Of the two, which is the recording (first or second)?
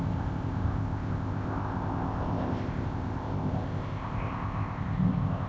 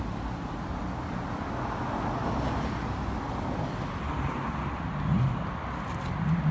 second